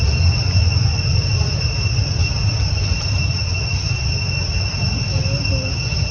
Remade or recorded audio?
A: recorded